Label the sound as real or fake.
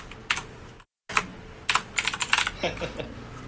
real